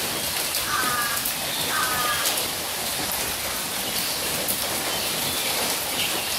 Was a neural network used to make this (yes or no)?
no